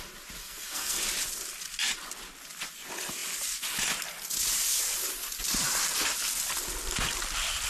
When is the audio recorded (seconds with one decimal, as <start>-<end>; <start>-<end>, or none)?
0.0-0.4; 1.0-7.7